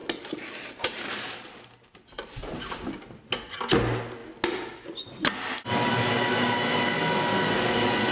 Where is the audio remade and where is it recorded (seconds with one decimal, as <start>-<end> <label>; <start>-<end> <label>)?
0.0-3.0 remade; 3.0-8.1 recorded